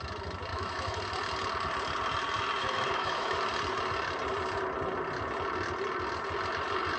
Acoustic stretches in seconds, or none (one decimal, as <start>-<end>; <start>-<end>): 0.0-0.5; 1.0-2.6; 3.4-7.0